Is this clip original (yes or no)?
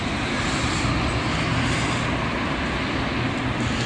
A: yes